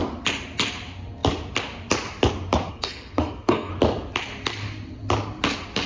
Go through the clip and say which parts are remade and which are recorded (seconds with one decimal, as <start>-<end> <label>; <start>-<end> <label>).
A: 0.0-2.7 recorded; 2.7-3.7 remade; 3.7-5.9 recorded